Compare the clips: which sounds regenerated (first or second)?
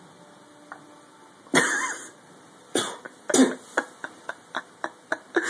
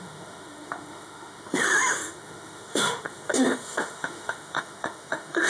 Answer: second